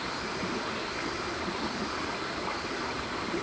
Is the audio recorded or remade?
recorded